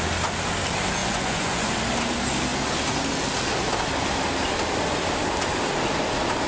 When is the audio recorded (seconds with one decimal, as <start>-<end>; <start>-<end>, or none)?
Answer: 0.0-1.0; 1.7-6.5